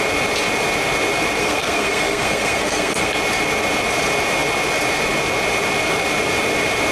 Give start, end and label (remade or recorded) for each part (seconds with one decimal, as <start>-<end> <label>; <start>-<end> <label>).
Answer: 0.0-1.4 recorded; 1.4-3.1 remade; 3.1-6.9 recorded